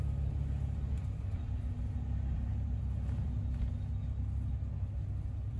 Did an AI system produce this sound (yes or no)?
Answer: no